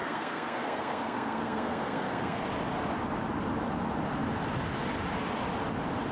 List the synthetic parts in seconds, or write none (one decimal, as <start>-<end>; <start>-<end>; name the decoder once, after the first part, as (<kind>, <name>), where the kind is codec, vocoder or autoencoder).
0.0-2.4 (codec, SNAC)